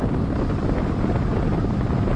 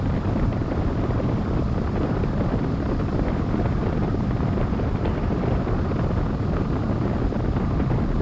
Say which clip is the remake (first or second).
second